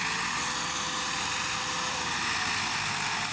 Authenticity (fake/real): real